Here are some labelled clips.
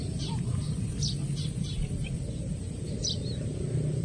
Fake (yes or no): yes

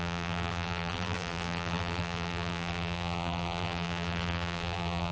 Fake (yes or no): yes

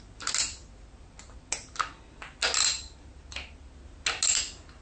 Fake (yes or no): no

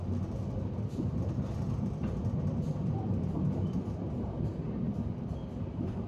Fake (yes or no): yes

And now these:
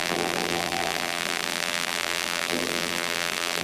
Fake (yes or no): yes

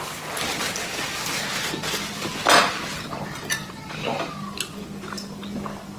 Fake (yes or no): no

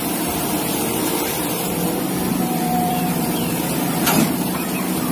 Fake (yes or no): yes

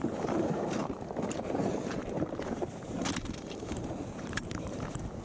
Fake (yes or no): yes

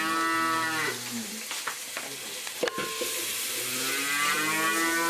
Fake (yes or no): no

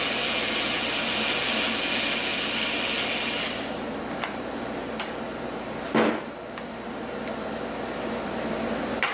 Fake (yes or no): no